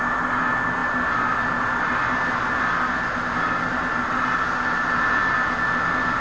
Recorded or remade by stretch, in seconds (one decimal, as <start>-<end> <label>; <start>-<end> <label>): 0.0-6.2 recorded